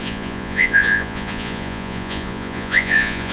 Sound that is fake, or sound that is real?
fake